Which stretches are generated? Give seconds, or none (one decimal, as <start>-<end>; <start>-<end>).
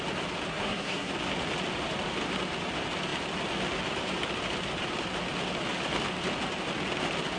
0.5-1.1